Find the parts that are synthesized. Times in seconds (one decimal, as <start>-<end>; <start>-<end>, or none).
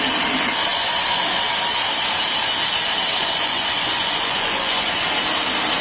0.7-1.2; 3.2-5.0